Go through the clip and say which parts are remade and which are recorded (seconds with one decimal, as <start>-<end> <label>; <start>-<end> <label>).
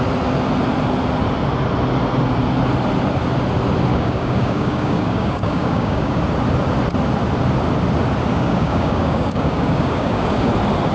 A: 0.0-3.9 recorded; 3.9-6.2 remade; 6.2-8.3 recorded; 8.3-10.5 remade; 10.5-10.9 recorded